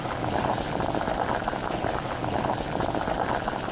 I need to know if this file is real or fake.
real